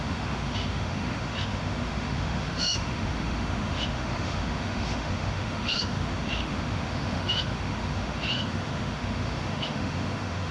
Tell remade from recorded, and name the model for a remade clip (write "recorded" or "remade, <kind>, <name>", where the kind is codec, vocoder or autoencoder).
remade, autoencoder, DAC-VAE